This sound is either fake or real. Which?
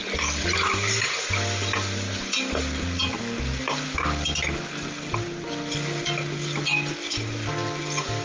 real